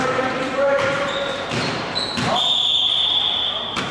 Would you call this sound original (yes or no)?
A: no